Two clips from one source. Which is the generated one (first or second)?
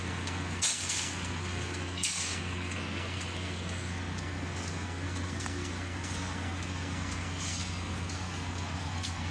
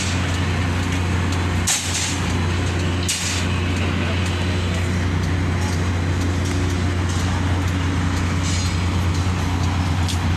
first